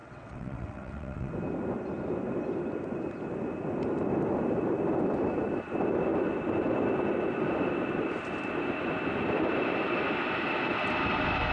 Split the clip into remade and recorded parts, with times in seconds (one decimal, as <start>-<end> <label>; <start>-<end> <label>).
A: 0.0-1.3 remade; 1.3-11.5 recorded